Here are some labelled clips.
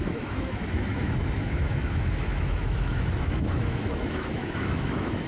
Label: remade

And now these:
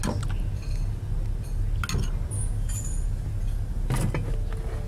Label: recorded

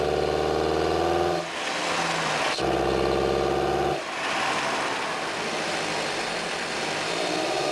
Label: recorded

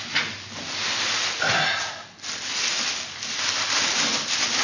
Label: recorded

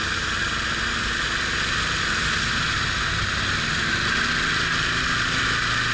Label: recorded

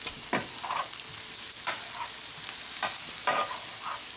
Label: recorded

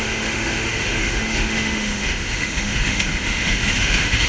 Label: remade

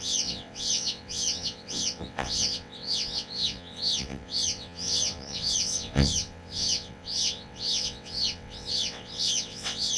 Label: remade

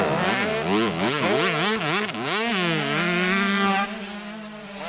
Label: recorded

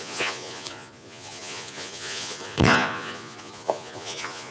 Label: remade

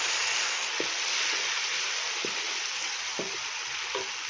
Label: remade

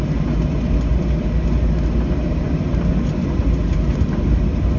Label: recorded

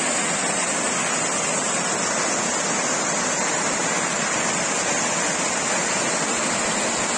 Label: recorded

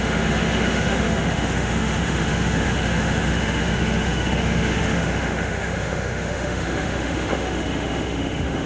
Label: remade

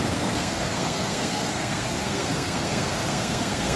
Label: remade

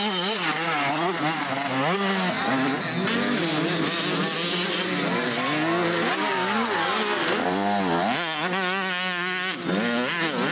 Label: recorded